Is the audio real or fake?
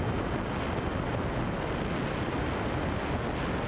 real